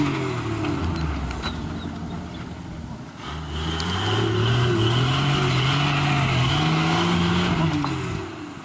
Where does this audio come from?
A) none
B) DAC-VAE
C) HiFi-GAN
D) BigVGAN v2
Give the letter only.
A